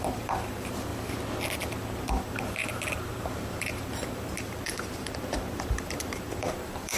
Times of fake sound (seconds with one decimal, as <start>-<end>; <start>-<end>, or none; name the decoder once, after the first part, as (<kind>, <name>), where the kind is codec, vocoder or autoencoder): 0.0-0.9 (vocoder, BigVGAN v2); 2.0-7.0